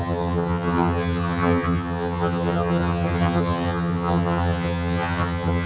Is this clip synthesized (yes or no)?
yes